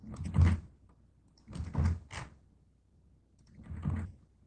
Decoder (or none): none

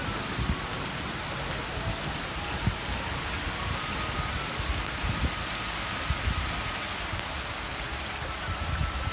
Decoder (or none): none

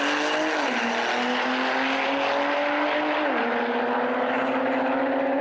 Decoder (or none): none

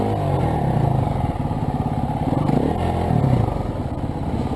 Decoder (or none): none